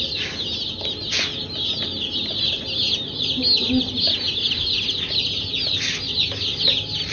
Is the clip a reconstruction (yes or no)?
no